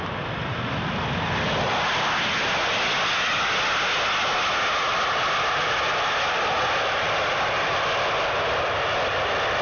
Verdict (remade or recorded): recorded